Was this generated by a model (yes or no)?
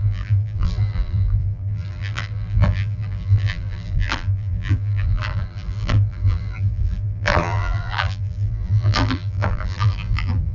yes